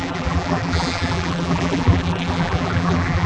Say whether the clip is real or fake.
fake